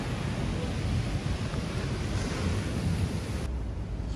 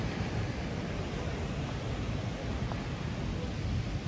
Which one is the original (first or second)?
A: first